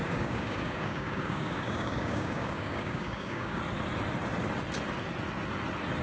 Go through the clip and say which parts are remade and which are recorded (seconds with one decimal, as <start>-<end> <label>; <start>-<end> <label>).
0.0-3.6 remade; 3.6-6.0 recorded